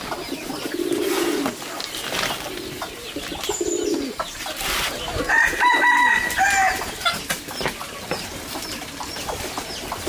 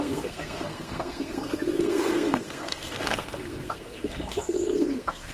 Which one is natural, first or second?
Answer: first